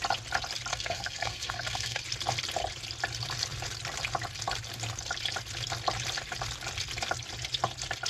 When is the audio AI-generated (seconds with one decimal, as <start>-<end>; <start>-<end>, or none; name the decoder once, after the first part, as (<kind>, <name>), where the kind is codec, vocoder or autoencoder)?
0.7-2.0 (codec, SNAC)